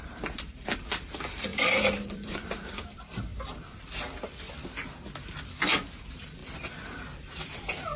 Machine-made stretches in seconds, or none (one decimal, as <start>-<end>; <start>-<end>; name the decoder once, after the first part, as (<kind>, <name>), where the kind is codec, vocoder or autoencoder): 0.0-3.3 (vocoder, BigVGAN v2); 5.3-6.4; 7.4-8.0